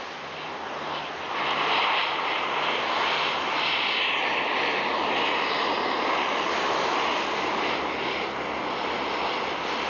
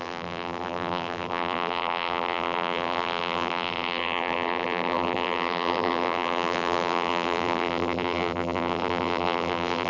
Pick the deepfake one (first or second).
second